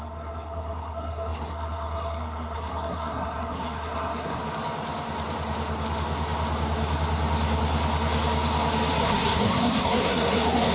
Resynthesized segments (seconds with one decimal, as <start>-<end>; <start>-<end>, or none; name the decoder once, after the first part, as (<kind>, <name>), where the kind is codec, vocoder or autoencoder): 0.0-4.4 (codec, SNAC); 9.0-10.7